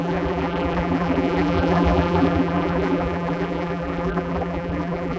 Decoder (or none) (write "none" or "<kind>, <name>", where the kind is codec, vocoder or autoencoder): vocoder, BigVGAN v2